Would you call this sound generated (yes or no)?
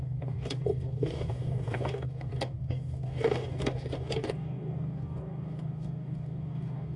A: yes